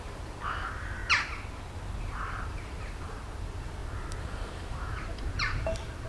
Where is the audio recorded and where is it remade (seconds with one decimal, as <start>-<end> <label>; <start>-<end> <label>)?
0.0-1.0 remade; 1.0-2.0 recorded; 2.0-3.8 remade; 3.8-4.3 recorded; 4.3-6.1 remade

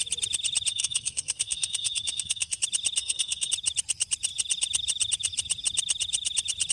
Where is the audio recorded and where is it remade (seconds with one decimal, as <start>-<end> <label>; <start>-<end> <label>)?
0.0-0.7 recorded; 0.7-2.6 remade; 2.6-3.0 recorded; 3.0-3.5 remade; 3.5-6.7 recorded

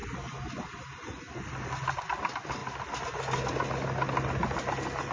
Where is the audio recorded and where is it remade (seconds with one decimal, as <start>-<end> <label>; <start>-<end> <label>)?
0.0-5.1 recorded

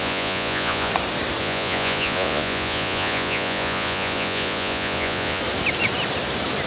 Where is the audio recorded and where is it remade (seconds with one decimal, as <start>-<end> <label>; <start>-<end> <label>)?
0.0-0.9 remade; 0.9-1.4 recorded; 1.4-5.4 remade; 5.4-6.7 recorded

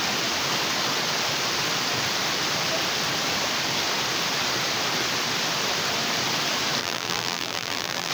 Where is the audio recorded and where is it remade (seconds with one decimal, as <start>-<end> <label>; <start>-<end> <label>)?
0.0-6.8 recorded; 6.8-8.1 remade

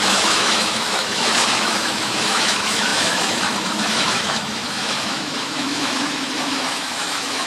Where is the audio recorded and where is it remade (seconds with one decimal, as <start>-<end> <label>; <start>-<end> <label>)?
0.0-7.5 remade

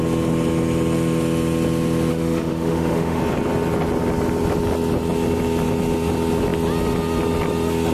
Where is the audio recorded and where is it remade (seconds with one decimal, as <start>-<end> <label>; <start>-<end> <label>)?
0.0-2.1 recorded; 2.1-3.2 remade; 3.2-7.9 recorded

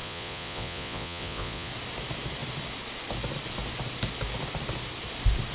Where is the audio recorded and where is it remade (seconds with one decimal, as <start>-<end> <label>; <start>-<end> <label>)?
0.0-1.7 remade; 1.7-5.5 recorded